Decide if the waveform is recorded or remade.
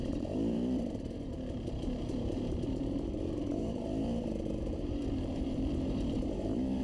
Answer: remade